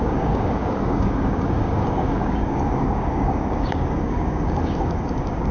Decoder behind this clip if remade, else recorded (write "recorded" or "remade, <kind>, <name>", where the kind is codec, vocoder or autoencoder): remade, codec, DAC